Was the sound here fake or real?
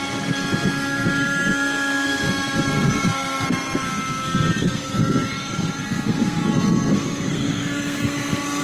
fake